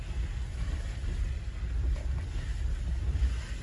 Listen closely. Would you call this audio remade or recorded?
recorded